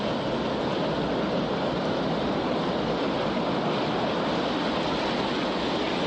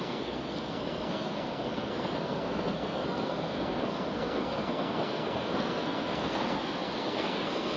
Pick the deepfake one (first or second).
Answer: second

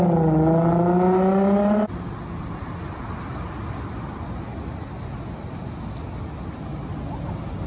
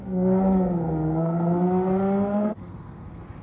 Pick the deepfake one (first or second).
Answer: second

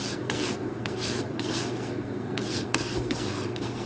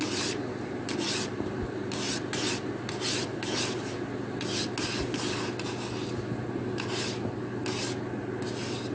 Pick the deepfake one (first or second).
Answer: first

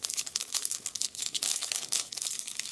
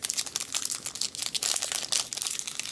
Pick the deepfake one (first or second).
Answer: first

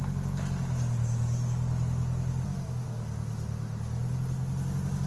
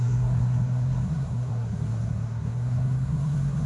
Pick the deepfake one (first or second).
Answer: second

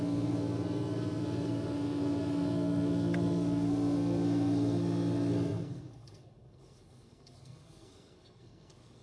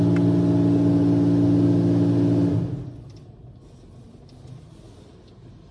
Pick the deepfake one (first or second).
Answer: first